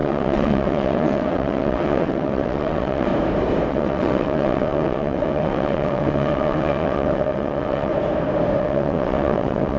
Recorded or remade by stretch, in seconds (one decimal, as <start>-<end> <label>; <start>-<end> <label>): 0.0-3.1 remade; 3.1-3.7 recorded; 3.7-7.9 remade; 7.9-8.6 recorded; 8.6-9.8 remade